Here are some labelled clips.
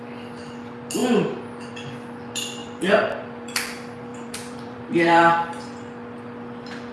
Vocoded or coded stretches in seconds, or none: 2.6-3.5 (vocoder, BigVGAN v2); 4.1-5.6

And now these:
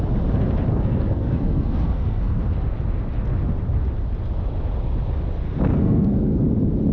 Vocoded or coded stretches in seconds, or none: 0.7-2.4 (codec, SNAC); 5.7-6.4

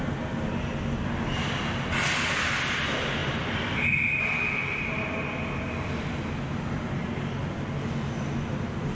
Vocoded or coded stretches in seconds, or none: none